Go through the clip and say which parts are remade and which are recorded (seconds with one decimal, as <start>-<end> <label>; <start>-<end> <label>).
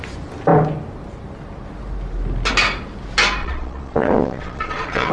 0.0-3.4 recorded; 3.4-5.1 remade